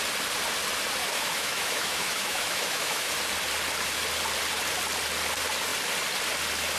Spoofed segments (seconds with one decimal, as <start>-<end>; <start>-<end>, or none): 1.0-3.1